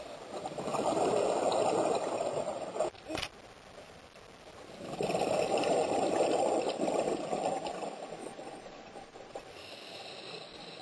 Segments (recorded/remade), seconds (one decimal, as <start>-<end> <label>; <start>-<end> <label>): 0.0-8.2 recorded; 8.2-9.4 remade; 9.4-10.8 recorded